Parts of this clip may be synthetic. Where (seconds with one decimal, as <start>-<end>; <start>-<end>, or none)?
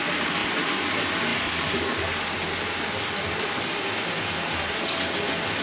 none